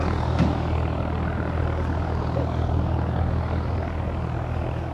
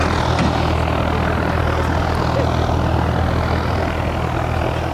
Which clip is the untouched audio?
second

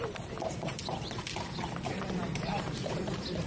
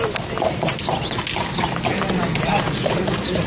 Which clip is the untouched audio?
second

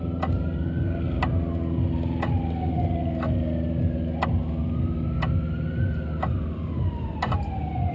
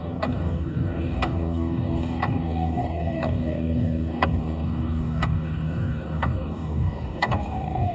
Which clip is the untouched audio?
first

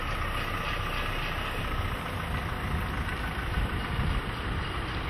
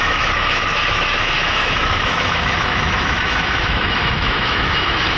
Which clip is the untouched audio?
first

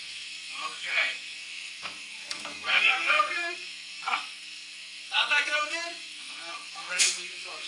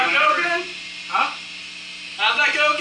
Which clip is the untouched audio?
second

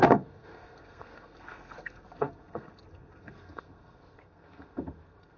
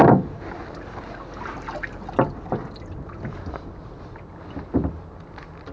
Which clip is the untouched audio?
second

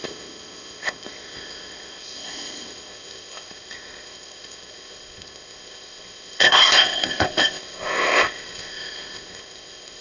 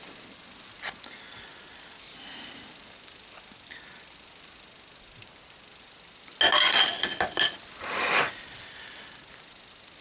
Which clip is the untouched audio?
second